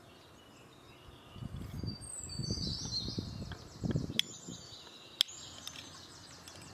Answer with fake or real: real